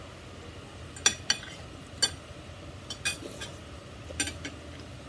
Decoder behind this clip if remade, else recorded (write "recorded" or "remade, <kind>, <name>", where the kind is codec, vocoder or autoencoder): recorded